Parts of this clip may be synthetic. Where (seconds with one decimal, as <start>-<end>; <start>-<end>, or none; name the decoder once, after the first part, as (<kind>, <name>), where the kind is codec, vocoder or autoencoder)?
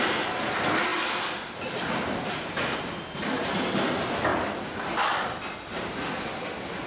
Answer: none